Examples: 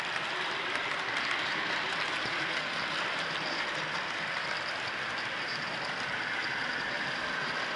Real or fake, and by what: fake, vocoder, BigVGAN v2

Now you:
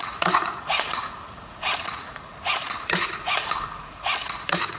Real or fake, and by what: fake, vocoder, Vocos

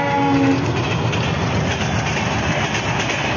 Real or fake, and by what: real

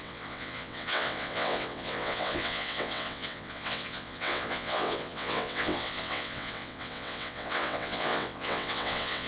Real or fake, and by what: fake, vocoder, WaveNeXt